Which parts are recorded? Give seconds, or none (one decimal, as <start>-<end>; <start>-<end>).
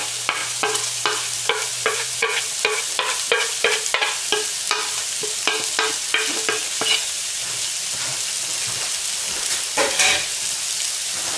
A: 0.0-0.4; 1.0-1.7; 2.4-11.4